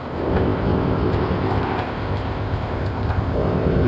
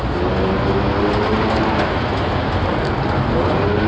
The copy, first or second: first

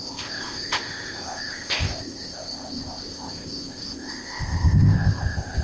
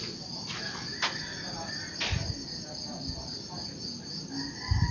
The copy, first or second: first